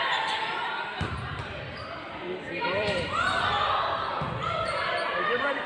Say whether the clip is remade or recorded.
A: remade